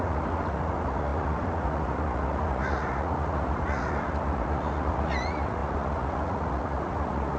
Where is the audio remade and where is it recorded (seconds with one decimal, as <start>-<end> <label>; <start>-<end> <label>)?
0.0-7.4 remade